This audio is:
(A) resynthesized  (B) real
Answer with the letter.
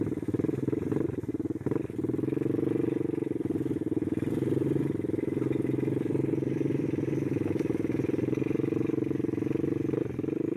B